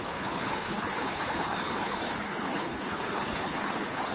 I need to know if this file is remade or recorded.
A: remade